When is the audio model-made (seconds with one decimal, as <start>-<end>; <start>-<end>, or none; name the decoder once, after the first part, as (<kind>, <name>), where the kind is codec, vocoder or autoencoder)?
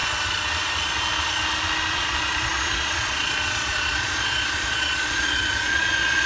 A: 1.9-6.3 (vocoder, Vocos)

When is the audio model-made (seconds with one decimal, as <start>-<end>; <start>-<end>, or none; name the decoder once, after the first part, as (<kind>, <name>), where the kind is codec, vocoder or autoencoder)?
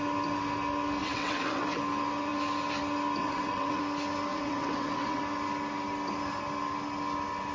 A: 1.0-1.8 (vocoder, WaveNeXt); 3.2-3.8; 4.3-5.2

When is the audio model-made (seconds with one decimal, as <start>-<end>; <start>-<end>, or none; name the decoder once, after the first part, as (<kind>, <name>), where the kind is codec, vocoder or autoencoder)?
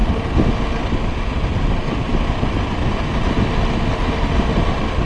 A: none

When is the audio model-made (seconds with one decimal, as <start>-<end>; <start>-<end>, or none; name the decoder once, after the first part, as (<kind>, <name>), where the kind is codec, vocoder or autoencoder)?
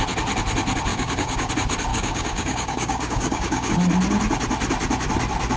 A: 0.9-1.5 (codec, DAC); 1.9-3.7